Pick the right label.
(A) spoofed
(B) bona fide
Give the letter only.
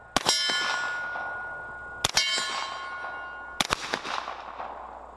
B